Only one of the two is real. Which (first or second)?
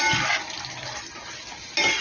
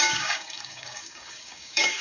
first